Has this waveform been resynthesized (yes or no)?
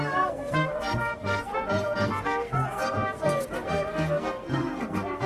yes